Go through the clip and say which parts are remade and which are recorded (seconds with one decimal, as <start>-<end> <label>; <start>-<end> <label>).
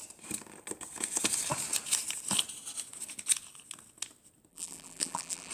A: 0.0-4.5 recorded; 4.5-5.5 remade